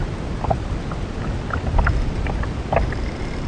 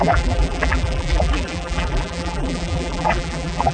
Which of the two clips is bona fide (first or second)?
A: first